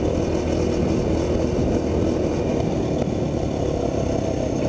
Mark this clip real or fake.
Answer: real